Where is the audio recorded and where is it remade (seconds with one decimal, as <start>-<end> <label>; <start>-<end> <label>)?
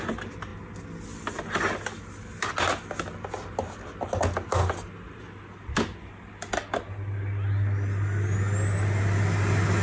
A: 0.0-9.8 recorded